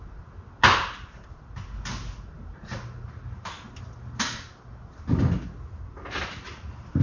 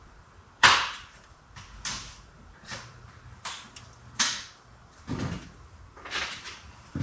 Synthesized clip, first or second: second